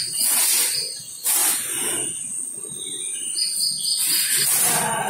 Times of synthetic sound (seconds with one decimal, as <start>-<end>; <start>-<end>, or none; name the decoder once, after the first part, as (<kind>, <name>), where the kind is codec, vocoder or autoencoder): none